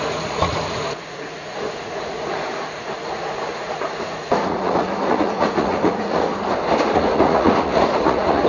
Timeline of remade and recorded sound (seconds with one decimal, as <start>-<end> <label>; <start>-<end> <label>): 0.0-6.3 remade; 6.3-6.8 recorded; 6.8-8.5 remade